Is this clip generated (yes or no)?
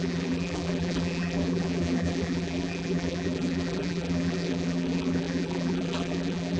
yes